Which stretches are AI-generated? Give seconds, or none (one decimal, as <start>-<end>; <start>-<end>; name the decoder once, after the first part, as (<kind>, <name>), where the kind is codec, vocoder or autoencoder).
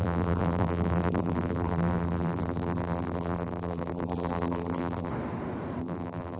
0.0-5.1 (vocoder, BigVGAN v2); 5.8-6.4